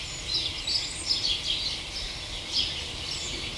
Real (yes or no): yes